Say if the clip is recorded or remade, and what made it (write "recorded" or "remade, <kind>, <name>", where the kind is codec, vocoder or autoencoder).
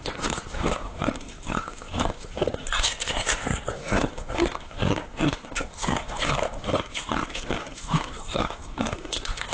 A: remade, codec, SNAC